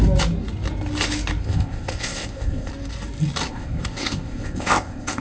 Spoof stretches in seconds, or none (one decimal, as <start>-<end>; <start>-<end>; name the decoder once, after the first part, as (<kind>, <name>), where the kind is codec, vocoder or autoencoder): 1.4-2.7 (codec, ZipCodec); 3.5-5.2